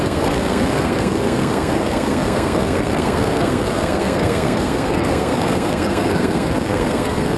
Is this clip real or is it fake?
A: fake